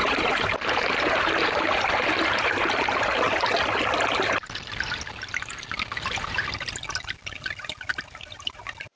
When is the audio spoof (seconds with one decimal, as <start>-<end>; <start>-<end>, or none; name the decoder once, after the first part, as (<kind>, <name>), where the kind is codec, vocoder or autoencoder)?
0.0-3.1 (vocoder, BigVGAN v2); 7.9-9.0